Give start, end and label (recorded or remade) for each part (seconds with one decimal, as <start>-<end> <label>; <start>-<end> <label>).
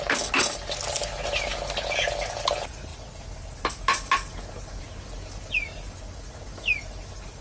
0.0-7.4 recorded